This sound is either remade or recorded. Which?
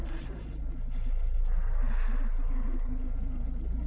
recorded